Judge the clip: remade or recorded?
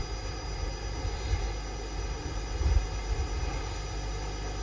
recorded